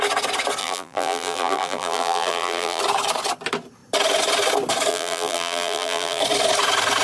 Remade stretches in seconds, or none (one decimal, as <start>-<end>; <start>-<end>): 0.6-2.8; 4.9-6.2